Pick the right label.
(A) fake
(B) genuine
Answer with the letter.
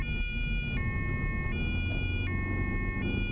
B